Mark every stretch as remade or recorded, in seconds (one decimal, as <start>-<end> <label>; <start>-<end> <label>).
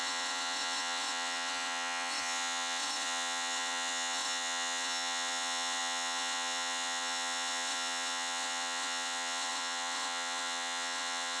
0.0-11.4 remade